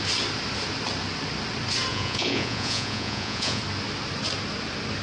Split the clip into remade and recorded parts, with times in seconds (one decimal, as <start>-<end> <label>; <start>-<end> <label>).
0.0-1.9 recorded; 1.9-3.6 remade; 3.6-5.0 recorded